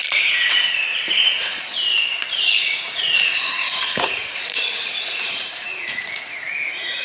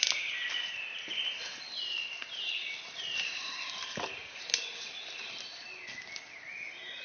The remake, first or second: first